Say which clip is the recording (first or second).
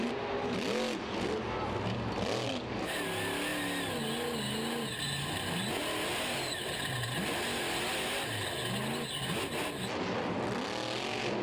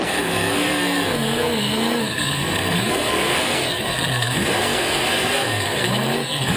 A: first